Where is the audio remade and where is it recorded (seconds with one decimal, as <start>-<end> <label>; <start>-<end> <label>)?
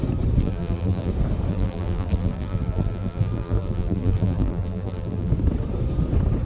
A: 0.0-0.4 recorded; 0.4-1.1 remade; 1.1-1.5 recorded; 1.5-5.3 remade; 5.3-6.4 recorded